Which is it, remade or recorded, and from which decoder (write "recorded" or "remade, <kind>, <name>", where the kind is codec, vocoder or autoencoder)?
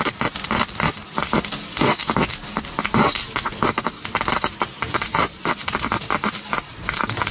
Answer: recorded